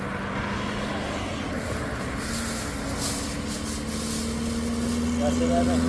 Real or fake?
real